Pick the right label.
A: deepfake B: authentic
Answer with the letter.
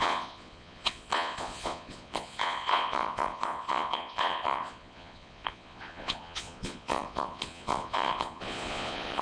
A